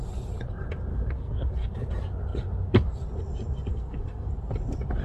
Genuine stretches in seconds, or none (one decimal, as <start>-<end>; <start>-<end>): 0.0-0.9; 1.5-3.7; 4.3-5.0